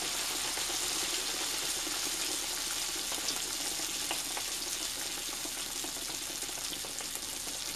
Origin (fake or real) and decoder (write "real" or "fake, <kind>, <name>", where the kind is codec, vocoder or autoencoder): real